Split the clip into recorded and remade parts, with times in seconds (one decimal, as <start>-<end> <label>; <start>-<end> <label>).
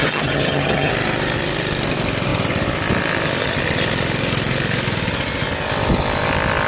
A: 0.0-0.9 remade; 0.9-6.7 recorded